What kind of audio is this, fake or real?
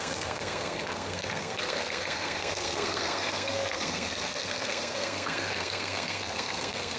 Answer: fake